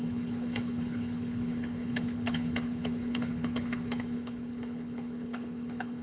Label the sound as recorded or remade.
remade